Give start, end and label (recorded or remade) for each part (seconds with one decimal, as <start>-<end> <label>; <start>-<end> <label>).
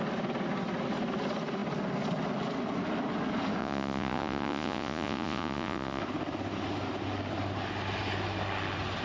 0.0-3.6 recorded; 3.6-6.0 remade; 6.0-9.0 recorded